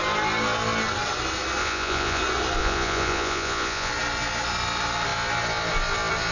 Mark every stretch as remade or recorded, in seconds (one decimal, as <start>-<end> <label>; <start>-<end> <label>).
0.0-1.6 recorded; 1.6-2.2 remade; 2.2-2.6 recorded; 2.6-3.9 remade; 3.9-6.3 recorded